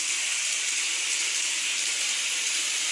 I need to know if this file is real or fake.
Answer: real